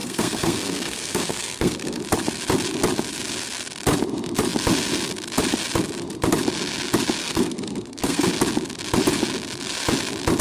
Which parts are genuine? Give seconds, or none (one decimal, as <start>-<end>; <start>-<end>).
2.0-7.2; 8.3-10.4